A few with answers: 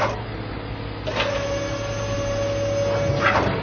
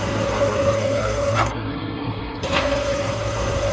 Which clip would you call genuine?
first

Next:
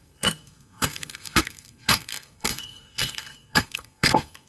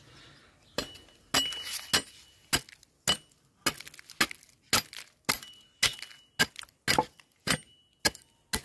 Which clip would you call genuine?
second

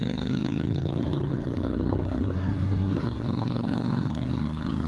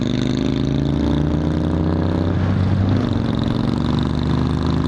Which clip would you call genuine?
second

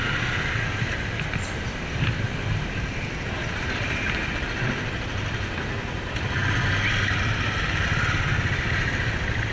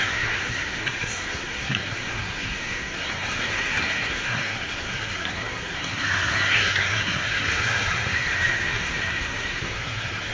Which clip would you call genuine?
first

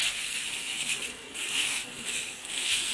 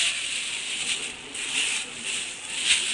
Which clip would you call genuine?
second